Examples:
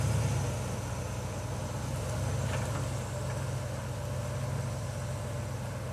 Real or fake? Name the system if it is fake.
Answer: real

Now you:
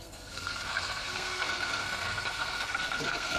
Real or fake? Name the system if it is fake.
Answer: fake, codec, SNAC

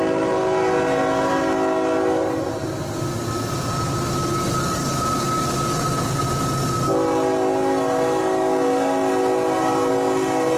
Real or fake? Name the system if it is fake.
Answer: real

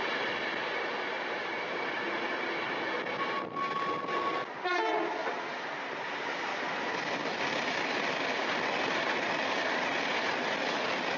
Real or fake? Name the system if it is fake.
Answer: real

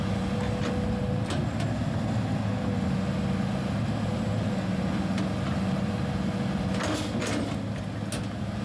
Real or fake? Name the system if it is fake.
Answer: real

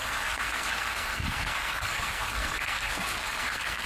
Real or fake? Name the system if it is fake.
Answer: fake, codec, SNAC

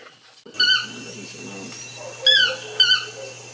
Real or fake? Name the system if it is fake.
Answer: real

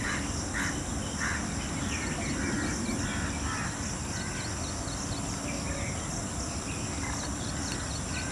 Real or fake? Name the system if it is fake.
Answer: real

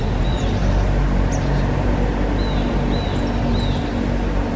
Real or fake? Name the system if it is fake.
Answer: real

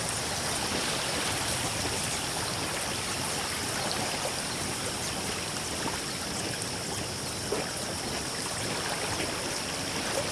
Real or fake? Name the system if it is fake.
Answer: real